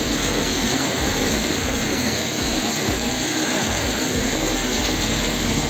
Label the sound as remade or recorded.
remade